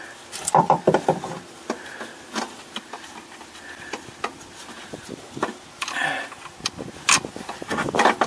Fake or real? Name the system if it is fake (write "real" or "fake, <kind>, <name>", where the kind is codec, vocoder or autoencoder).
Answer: real